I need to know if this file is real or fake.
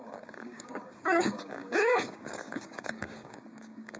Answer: fake